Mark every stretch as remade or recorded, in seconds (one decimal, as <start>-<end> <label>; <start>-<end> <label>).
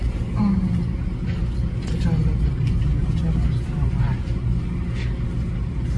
0.0-6.0 recorded